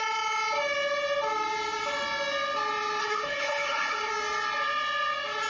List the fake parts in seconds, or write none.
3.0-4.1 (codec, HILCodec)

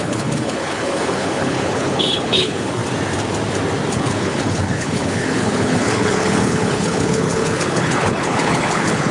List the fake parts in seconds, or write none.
0.0-2.8 (codec, HILCodec); 3.9-9.1

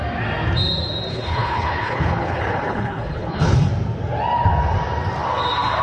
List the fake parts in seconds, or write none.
1.1-3.7 (codec, HILCodec)

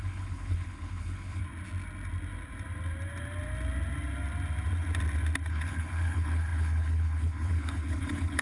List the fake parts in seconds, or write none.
0.0-1.4 (codec, HILCodec); 5.5-8.4

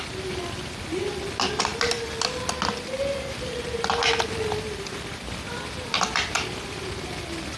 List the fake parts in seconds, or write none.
none

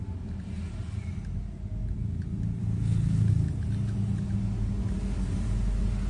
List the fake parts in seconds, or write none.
2.6-3.3 (codec, HILCodec)

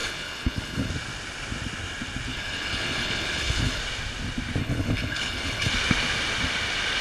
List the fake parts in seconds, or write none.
0.0-0.9 (codec, HILCodec); 2.3-3.8; 4.6-5.7

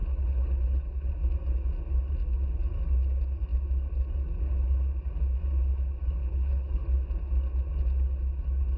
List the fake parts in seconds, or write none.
0.0-1.1 (codec, HILCodec); 6.2-6.8